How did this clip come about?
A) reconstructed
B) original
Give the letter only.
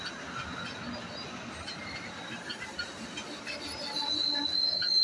B